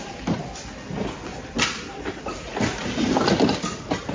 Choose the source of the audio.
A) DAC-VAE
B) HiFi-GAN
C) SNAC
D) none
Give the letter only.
D